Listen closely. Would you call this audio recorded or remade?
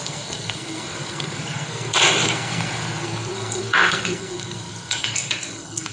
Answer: remade